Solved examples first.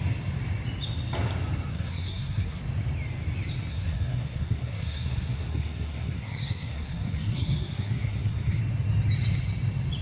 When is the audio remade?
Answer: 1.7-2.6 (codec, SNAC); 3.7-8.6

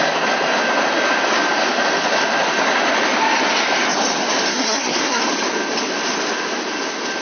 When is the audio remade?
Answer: 4.5-5.2 (codec, SNAC)

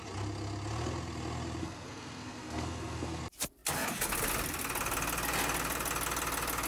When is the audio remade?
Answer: 1.6-3.2 (codec, SNAC)